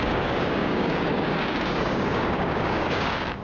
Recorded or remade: remade